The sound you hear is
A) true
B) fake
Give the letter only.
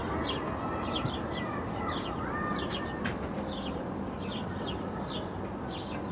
A